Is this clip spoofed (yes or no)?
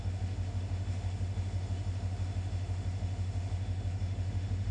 yes